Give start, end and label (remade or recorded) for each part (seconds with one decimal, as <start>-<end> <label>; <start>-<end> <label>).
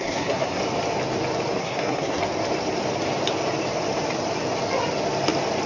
0.0-0.6 remade; 0.6-1.6 recorded; 1.6-2.2 remade; 2.2-5.7 recorded